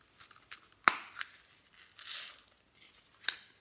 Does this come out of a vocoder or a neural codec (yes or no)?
no